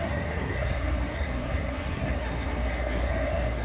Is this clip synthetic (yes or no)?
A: yes